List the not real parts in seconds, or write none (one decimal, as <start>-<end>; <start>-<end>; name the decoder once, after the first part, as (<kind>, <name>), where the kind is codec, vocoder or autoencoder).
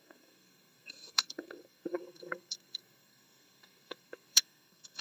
0.0-5.0 (codec, SNAC)